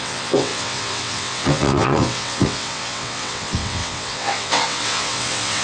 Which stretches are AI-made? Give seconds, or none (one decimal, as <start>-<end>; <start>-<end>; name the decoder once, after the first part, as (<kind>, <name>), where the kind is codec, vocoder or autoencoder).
0.0-5.6 (vocoder, WaveNeXt)